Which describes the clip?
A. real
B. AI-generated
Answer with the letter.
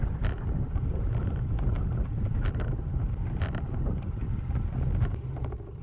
A